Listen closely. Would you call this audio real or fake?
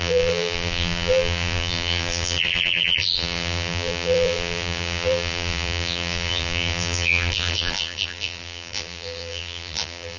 fake